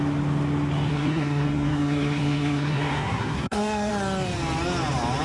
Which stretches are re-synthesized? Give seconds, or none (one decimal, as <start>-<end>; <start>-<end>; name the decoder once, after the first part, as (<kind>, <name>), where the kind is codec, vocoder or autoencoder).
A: 0.9-3.9 (codec, SNAC)